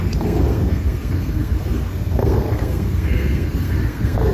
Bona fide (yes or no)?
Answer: no